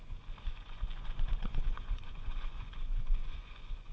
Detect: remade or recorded remade